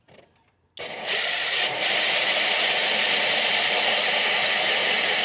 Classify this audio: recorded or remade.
recorded